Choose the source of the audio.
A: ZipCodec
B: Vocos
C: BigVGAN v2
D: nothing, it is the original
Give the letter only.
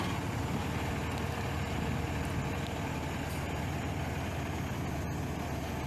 D